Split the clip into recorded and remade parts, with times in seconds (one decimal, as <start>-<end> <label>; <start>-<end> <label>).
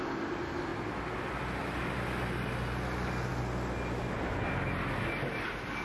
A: 0.0-5.8 recorded